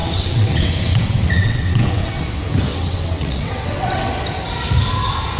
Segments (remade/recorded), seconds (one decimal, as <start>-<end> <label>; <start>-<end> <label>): 0.0-2.2 remade; 2.2-2.7 recorded; 2.7-4.1 remade; 4.1-5.4 recorded